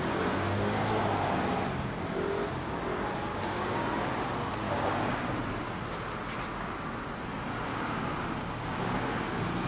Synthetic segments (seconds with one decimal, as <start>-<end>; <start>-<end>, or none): 3.3-4.1; 4.6-5.3; 7.7-9.0